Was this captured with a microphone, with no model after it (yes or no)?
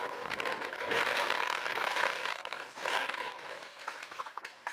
no